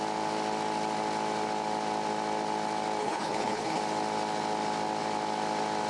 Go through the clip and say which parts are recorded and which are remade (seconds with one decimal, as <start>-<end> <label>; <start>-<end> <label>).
0.0-3.0 recorded; 3.0-3.8 remade; 3.8-5.9 recorded